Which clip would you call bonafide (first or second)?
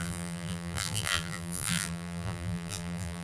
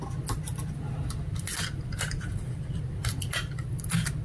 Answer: second